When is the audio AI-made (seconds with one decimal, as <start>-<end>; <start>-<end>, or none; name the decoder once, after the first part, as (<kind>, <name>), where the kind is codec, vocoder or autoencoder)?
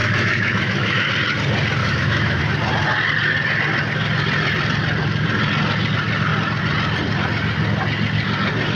0.0-1.1 (autoencoder, DAC-VAE); 1.8-2.4